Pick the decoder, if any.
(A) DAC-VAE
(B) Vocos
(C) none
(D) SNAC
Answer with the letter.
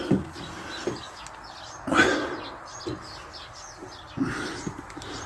C